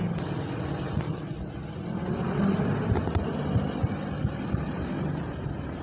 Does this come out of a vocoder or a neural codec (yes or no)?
no